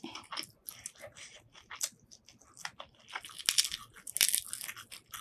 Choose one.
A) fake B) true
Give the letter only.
B